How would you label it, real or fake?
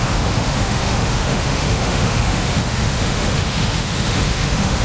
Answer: fake